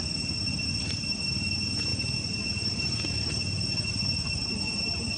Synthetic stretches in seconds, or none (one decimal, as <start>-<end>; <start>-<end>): none